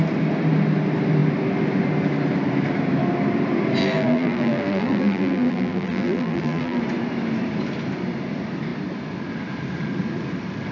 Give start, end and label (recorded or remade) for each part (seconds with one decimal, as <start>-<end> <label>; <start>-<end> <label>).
0.0-3.8 recorded; 3.8-6.8 remade; 6.8-10.7 recorded